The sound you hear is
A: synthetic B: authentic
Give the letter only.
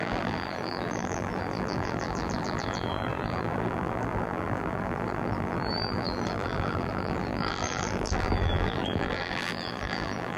A